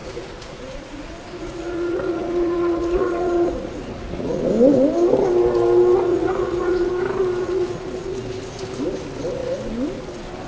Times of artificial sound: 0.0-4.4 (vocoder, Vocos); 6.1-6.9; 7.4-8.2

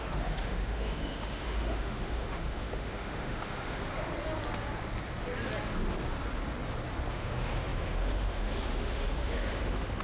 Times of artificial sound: 0.0-3.9 (autoencoder, DAC-VAE); 7.1-10.0

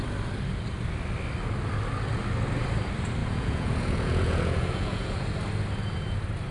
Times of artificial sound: 3.2-5.3 (vocoder, Vocos)